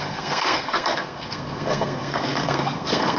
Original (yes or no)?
no